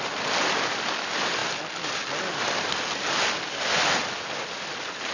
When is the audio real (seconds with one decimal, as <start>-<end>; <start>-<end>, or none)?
0.0-5.1